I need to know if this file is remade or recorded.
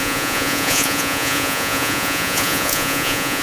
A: remade